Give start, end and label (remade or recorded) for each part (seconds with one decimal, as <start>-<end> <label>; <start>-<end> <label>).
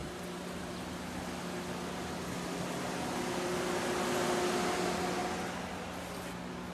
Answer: 0.0-6.7 recorded